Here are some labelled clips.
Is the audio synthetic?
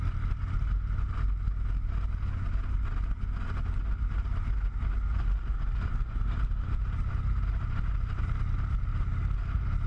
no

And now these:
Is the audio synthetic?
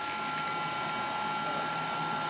no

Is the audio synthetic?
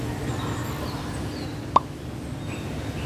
no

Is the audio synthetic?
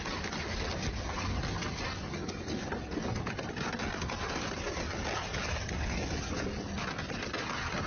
no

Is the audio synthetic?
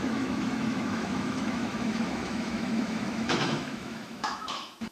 yes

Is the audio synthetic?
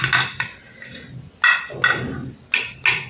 no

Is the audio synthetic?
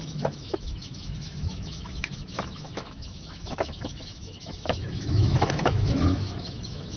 yes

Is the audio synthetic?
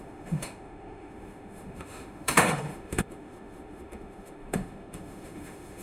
yes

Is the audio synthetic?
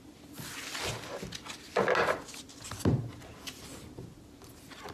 no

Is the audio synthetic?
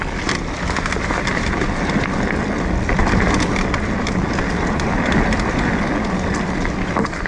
no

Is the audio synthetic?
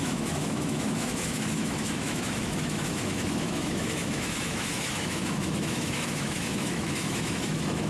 yes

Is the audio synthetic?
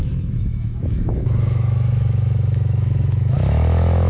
yes